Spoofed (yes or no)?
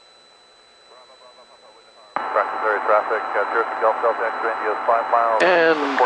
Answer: no